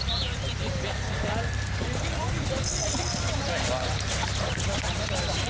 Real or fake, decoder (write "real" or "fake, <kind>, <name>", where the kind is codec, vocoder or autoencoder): real